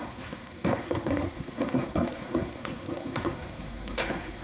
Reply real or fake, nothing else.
fake